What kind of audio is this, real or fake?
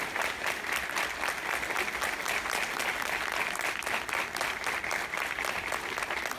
real